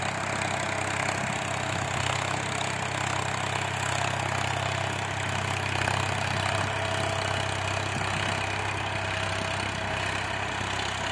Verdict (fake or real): real